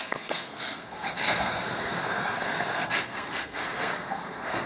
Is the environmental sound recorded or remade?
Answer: remade